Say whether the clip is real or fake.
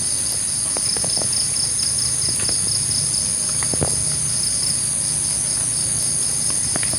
real